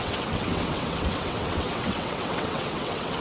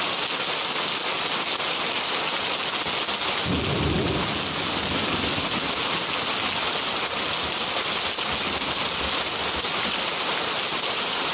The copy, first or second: first